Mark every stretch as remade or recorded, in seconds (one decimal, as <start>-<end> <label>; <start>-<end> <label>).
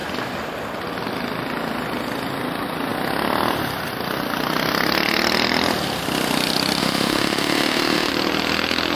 0.0-6.8 recorded; 6.8-8.1 remade; 8.1-8.9 recorded